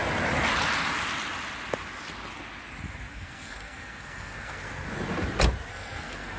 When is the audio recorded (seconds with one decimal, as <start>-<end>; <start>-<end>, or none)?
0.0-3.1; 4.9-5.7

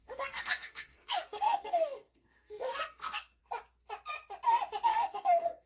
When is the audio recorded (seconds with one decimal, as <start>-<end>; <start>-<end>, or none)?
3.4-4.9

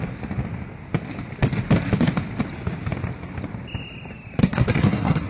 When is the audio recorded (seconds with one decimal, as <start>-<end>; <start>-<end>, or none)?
0.0-4.4

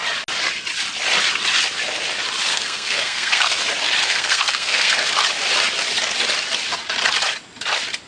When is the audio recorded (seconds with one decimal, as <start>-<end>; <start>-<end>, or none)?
0.0-2.5; 3.6-4.0; 5.1-8.1